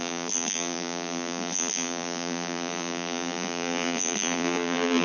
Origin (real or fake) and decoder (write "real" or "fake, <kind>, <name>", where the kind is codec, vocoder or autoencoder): fake, vocoder, BigVGAN v2